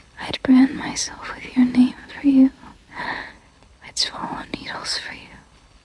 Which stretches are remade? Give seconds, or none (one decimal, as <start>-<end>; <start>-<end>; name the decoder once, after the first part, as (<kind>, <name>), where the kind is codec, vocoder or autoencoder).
0.0-0.7 (codec, HILCodec); 2.9-4.2; 5.2-5.8